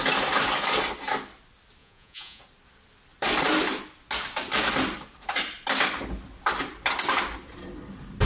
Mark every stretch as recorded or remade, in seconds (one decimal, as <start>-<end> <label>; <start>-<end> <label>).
0.0-1.8 recorded; 1.8-2.4 remade; 2.4-8.3 recorded